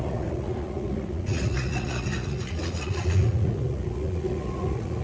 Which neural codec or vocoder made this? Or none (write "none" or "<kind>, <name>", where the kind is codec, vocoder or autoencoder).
vocoder, Vocos